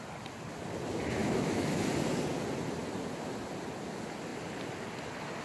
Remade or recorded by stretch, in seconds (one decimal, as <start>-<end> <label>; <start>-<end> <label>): 0.0-1.2 recorded; 1.2-1.8 remade; 1.8-5.4 recorded